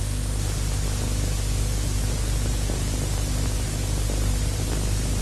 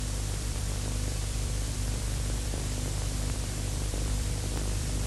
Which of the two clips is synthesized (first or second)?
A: second